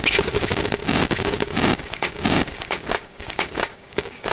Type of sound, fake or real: fake